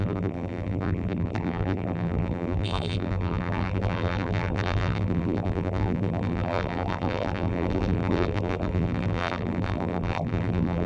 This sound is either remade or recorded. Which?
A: remade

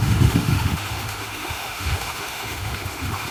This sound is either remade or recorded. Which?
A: remade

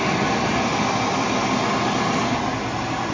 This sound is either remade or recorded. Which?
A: recorded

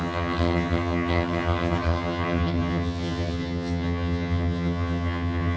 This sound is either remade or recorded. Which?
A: remade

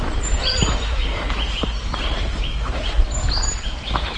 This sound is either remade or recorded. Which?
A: remade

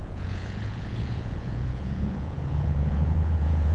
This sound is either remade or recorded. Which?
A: remade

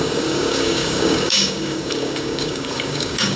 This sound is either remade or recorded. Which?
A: remade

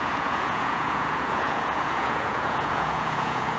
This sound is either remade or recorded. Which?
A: remade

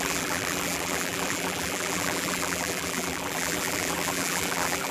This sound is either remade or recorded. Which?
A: remade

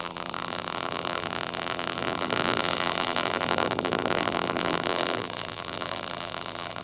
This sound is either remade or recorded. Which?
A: remade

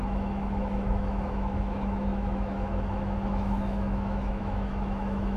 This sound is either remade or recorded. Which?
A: remade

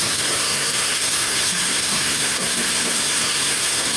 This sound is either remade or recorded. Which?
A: remade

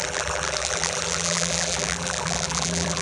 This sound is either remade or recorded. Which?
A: remade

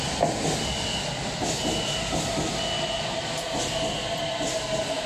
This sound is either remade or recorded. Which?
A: recorded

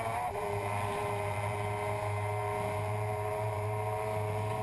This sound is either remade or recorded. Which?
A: remade